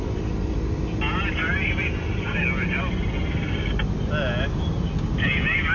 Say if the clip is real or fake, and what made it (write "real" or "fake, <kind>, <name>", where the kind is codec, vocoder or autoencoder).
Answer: real